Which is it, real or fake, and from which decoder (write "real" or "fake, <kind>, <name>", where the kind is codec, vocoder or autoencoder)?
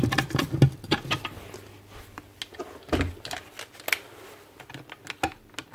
real